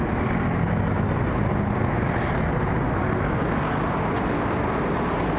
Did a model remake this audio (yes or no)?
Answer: no